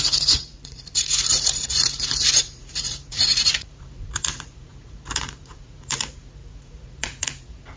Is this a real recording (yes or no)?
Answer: no